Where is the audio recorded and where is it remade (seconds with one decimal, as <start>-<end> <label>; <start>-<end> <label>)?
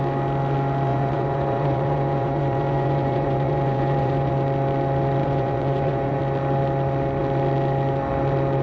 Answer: 0.0-0.9 recorded; 0.9-4.3 remade; 4.3-5.2 recorded; 5.2-6.2 remade; 6.2-8.6 recorded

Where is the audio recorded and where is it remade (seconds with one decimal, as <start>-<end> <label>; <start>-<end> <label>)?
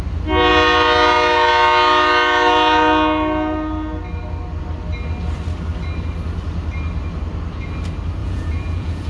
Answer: 0.0-8.2 recorded; 8.2-9.1 remade